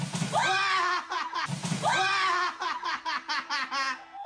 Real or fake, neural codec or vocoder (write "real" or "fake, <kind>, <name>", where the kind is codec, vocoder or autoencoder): real